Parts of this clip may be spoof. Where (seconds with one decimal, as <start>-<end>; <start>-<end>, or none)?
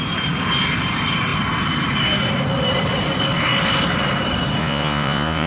4.6-5.5